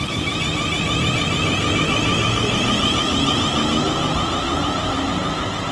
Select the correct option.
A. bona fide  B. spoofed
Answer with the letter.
A